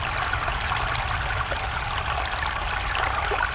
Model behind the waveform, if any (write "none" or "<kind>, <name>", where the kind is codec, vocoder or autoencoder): none